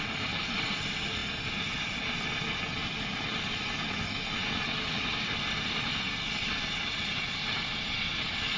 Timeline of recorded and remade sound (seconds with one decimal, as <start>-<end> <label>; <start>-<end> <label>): 0.0-8.6 recorded